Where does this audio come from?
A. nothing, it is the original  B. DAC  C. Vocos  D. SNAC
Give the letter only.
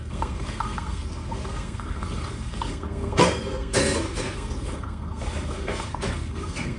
D